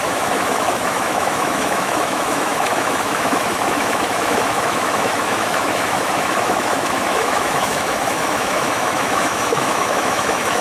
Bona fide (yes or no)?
no